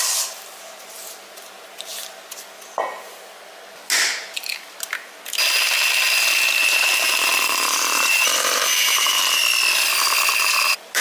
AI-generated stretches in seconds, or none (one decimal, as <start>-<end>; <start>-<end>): 0.0-1.9; 6.5-9.4; 10.3-11.0